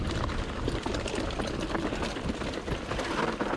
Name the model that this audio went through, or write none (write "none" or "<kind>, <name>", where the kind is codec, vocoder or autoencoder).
none